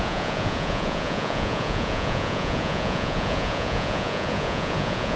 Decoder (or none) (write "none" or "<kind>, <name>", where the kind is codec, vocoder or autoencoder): vocoder, Vocos